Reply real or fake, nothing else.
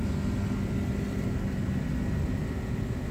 real